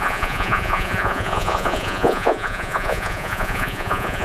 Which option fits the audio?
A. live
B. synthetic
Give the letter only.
B